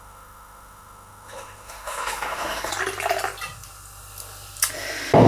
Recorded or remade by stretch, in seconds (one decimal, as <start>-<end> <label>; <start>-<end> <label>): 0.0-2.7 remade; 2.7-5.3 recorded